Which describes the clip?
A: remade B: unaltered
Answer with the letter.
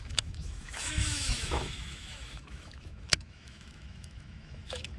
A